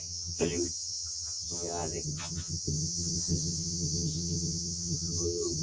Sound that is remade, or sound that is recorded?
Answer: remade